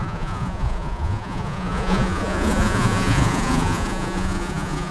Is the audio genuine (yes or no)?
no